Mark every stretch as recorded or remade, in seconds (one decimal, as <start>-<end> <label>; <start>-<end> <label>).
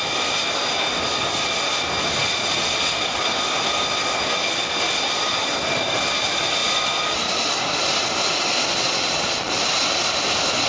0.0-8.5 recorded; 8.5-9.5 remade; 9.5-10.7 recorded